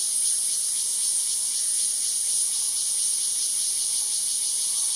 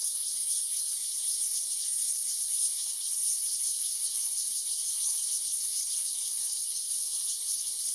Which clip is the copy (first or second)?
second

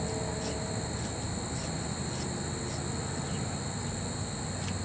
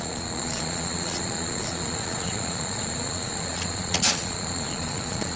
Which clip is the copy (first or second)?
second